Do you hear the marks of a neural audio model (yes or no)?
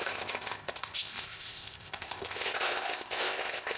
yes